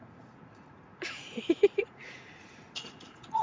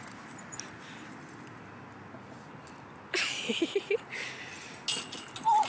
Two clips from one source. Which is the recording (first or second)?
second